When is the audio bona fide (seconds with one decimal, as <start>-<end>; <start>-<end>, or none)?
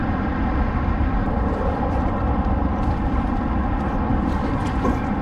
0.0-1.0; 2.7-4.1; 4.7-5.2